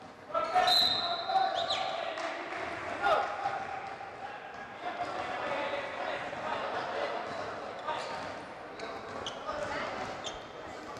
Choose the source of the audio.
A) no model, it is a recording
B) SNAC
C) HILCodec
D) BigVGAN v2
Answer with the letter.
A